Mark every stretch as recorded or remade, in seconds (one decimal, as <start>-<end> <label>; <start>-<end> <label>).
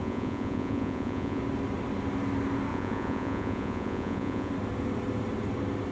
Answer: 0.0-1.4 remade; 1.4-2.7 recorded; 2.7-4.5 remade; 4.5-5.9 recorded